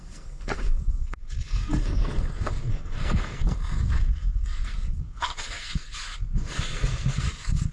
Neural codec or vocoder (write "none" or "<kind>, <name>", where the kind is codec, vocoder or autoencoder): codec, SNAC